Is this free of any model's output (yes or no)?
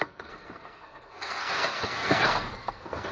no